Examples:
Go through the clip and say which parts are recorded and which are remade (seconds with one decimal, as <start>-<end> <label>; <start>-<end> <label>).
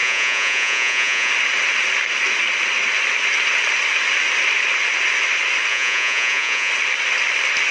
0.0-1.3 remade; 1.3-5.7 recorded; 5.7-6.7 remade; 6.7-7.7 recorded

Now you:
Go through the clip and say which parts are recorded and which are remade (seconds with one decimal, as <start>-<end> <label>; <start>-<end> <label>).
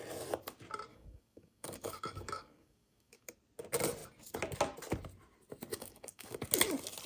0.0-0.9 recorded; 0.9-3.3 remade; 3.3-5.7 recorded; 5.7-6.4 remade; 6.4-7.1 recorded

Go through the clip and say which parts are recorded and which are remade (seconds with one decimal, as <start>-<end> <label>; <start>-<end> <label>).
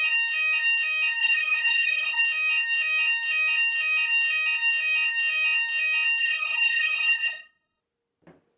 0.0-1.2 recorded; 1.2-2.2 remade; 2.2-6.2 recorded; 6.2-7.8 remade; 7.8-8.6 recorded